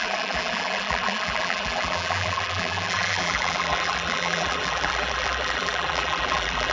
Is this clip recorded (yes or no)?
no